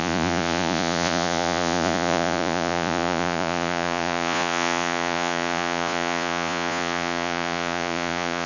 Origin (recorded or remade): remade